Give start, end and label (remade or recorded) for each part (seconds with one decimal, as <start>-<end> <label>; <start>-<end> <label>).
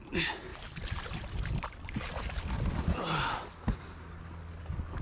0.0-5.0 recorded